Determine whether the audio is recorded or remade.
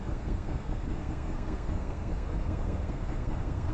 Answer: remade